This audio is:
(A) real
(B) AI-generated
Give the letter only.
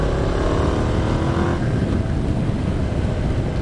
A